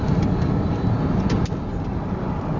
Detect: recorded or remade recorded